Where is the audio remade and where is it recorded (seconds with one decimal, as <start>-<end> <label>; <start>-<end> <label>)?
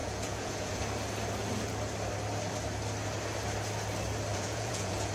0.0-0.8 remade; 0.8-4.3 recorded; 4.3-5.1 remade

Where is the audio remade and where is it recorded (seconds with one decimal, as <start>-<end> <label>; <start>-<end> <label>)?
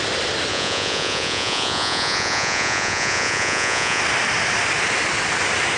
0.0-0.5 recorded; 0.5-4.0 remade; 4.0-5.8 recorded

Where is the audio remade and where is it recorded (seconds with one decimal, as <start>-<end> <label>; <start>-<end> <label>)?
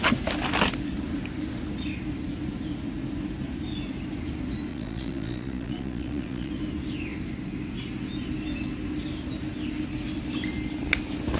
0.0-4.7 recorded; 4.7-6.5 remade; 6.5-11.4 recorded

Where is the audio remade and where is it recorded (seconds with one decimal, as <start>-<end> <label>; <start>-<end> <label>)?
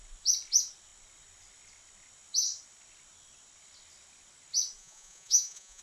0.0-4.8 recorded; 4.8-5.8 remade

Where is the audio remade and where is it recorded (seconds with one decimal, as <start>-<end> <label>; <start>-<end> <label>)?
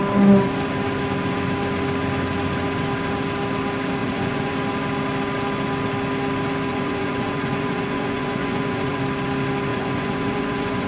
0.0-4.0 recorded; 4.0-4.5 remade; 4.5-6.7 recorded; 6.7-9.0 remade; 9.0-9.7 recorded; 9.7-10.9 remade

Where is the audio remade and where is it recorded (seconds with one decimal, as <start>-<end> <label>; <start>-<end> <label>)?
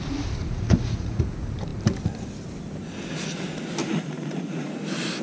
0.0-0.4 recorded; 0.4-1.2 remade; 1.2-3.8 recorded; 3.8-4.7 remade; 4.7-5.2 recorded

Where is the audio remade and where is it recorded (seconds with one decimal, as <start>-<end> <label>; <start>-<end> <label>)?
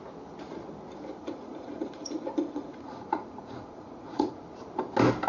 0.0-1.2 recorded; 1.2-4.4 remade; 4.4-5.3 recorded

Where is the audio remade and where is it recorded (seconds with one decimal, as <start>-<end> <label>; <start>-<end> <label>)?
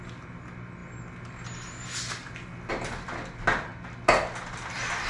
0.0-5.1 recorded